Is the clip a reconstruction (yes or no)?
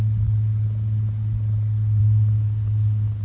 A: no